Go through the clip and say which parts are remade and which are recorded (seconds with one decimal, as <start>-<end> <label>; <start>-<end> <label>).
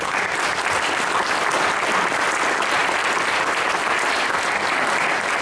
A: 0.0-5.4 recorded